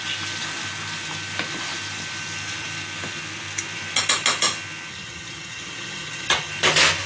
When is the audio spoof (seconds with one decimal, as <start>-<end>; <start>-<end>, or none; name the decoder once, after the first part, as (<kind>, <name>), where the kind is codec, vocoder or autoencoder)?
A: 4.9-6.5 (vocoder, HiFi-GAN)